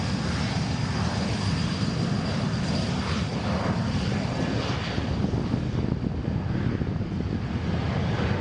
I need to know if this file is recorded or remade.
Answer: recorded